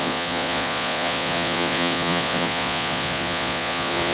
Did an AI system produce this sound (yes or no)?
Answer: yes